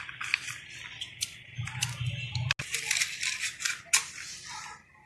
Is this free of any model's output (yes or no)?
yes